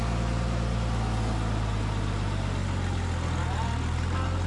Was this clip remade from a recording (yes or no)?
no